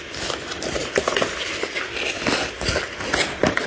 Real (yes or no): yes